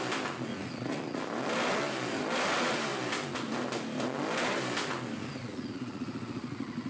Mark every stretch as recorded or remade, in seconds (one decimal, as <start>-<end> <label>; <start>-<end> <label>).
0.0-0.5 recorded; 0.5-1.2 remade; 1.2-5.4 recorded; 5.4-6.9 remade